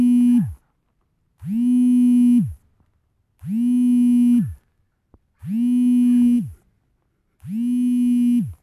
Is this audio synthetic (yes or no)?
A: no